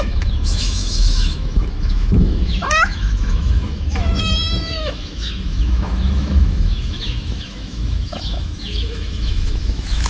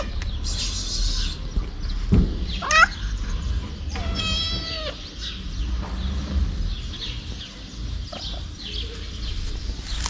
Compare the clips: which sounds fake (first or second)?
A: first